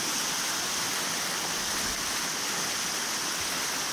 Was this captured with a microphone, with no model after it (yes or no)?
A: yes